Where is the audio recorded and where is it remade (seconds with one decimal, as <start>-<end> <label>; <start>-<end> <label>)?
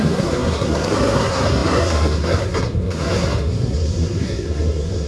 0.0-5.1 remade